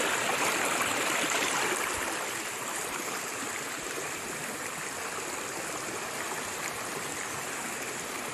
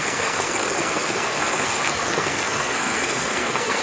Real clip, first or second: first